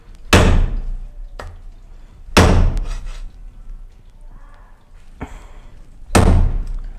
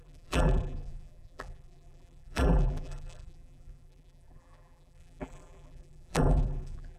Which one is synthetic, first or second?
second